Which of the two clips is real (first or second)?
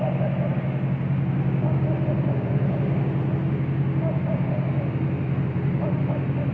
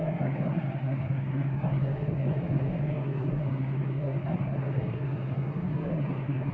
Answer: first